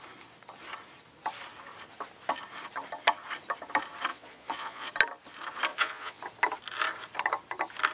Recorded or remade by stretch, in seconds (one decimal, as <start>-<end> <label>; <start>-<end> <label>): 0.0-4.1 recorded; 4.1-4.9 remade; 4.9-5.7 recorded; 5.7-6.2 remade; 6.2-7.9 recorded